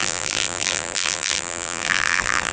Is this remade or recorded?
remade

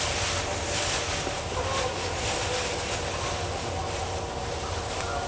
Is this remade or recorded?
recorded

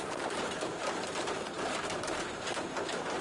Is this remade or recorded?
remade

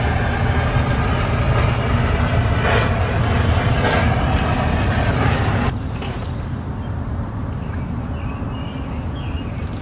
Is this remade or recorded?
recorded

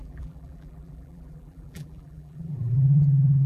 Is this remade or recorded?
remade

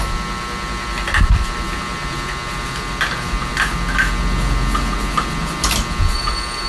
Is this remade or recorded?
recorded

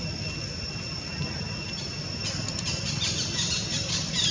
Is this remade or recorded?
recorded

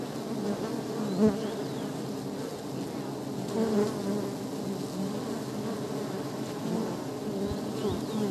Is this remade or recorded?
recorded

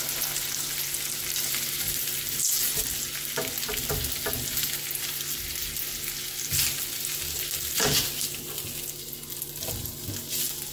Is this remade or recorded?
recorded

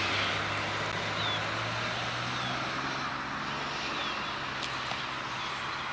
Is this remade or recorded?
recorded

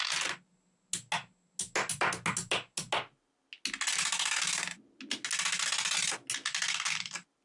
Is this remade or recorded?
recorded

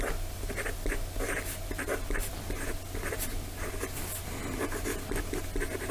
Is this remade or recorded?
recorded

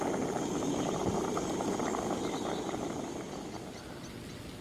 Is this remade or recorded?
recorded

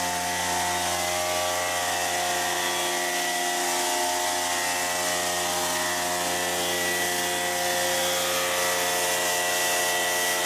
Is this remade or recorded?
recorded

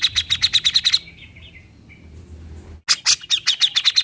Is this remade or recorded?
recorded